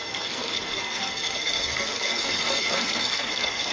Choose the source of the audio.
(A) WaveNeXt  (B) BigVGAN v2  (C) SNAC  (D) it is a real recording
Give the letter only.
C